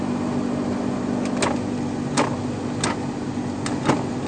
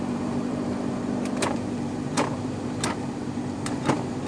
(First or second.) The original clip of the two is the first